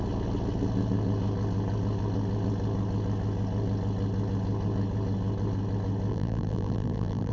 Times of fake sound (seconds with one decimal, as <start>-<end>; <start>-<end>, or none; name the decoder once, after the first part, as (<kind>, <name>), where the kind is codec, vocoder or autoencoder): 6.1-7.3 (vocoder, BigVGAN v2)